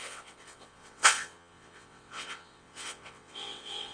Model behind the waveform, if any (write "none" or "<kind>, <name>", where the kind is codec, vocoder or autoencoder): vocoder, WaveNeXt